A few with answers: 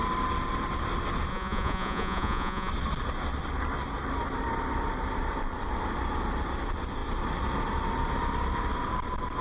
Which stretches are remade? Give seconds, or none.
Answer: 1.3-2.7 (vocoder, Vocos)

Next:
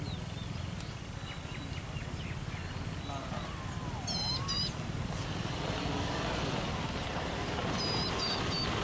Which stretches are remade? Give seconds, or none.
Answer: none

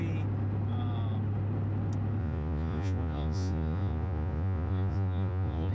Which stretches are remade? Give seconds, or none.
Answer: 2.2-5.7 (vocoder, Vocos)

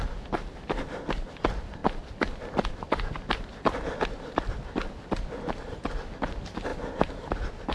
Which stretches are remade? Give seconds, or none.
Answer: none

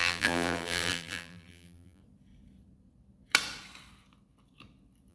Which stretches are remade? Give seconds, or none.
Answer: 0.0-2.0 (vocoder, BigVGAN v2)

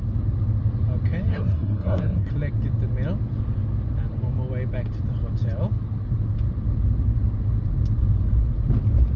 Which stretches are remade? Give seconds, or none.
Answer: 1.3-2.3 (codec, SNAC)